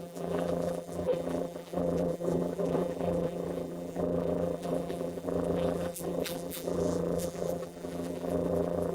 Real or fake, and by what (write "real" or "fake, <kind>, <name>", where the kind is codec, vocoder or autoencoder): fake, vocoder, BigVGAN v2